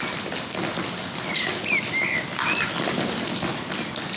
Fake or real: real